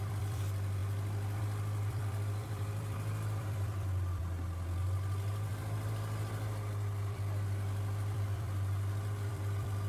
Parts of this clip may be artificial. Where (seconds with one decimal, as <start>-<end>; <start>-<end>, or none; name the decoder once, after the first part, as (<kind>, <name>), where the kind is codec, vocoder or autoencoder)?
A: 0.0-4.2 (vocoder, BigVGAN v2); 5.5-9.9

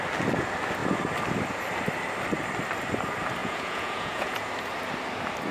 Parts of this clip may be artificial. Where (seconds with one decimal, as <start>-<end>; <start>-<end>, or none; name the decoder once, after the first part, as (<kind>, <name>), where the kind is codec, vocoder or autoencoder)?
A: 3.4-4.5 (vocoder, Vocos)

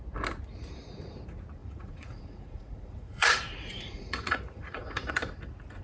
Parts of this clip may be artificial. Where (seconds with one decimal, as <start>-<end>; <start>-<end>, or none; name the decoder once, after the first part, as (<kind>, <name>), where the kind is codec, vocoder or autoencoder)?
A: 1.6-5.1 (vocoder, Vocos)

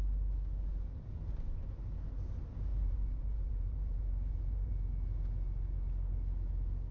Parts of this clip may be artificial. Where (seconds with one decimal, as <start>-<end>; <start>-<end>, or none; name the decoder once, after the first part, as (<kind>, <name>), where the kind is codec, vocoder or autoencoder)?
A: 2.7-4.7 (vocoder, BigVGAN v2)

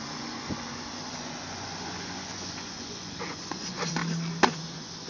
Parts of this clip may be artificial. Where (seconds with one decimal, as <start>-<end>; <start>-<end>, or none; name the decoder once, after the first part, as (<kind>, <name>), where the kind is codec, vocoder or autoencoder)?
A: 0.0-4.0 (vocoder, Vocos); 4.5-5.1

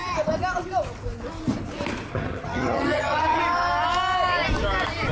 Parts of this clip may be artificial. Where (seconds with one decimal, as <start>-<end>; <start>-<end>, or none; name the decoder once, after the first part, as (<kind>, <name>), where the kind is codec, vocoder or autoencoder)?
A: 2.1-3.4 (vocoder, HiFi-GAN)